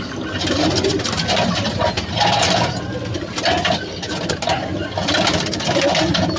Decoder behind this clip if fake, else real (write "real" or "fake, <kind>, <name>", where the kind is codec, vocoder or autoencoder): real